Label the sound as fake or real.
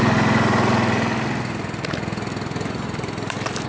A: real